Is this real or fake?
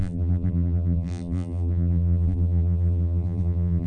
fake